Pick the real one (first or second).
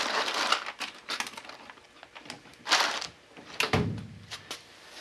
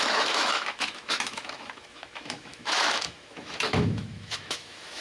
first